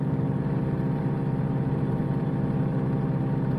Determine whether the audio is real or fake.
fake